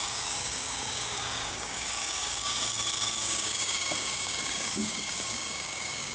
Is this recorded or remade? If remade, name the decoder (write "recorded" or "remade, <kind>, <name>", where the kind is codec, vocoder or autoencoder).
remade, codec, DAC